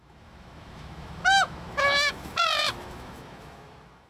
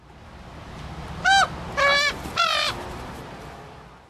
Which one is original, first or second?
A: second